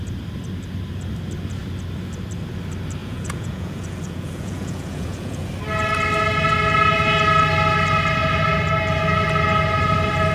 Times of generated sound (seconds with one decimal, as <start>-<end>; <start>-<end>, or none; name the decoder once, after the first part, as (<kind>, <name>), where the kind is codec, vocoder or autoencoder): 3.0-5.5 (vocoder, Vocos)